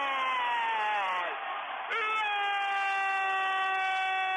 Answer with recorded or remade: recorded